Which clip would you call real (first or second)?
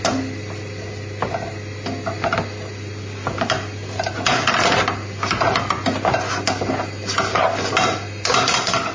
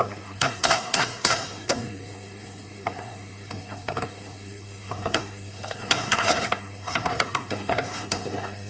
first